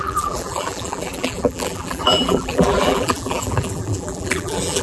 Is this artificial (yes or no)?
yes